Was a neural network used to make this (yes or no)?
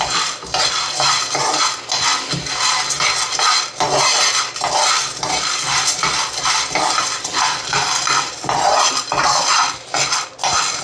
no